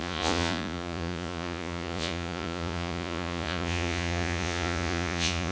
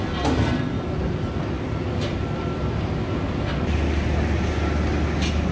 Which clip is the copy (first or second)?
first